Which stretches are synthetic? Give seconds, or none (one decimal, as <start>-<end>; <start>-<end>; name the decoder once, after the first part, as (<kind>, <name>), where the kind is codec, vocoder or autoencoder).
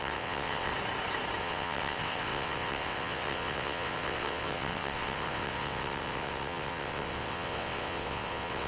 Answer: 0.0-0.7 (vocoder, WaveNeXt); 1.4-8.7